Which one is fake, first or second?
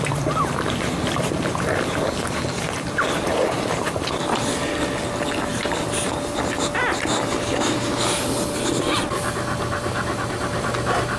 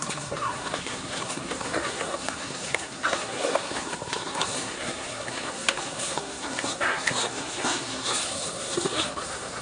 second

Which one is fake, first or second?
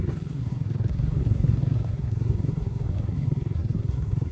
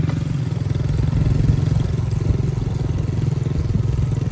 first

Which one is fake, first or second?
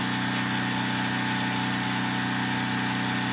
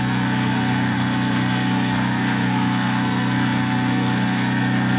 second